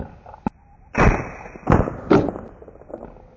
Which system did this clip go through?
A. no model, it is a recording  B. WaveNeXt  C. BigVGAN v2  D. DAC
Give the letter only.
A